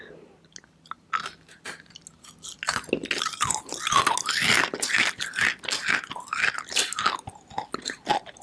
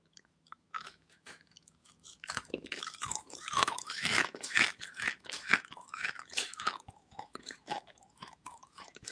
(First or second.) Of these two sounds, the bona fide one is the first